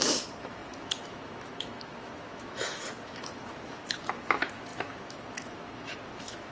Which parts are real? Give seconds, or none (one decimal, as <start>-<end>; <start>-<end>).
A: none